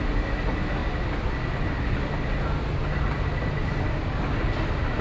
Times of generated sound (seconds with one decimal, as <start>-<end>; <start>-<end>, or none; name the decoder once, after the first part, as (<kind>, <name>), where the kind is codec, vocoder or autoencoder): none